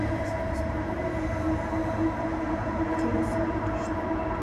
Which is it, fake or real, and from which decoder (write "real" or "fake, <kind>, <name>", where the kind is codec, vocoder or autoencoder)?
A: fake, vocoder, BigVGAN v2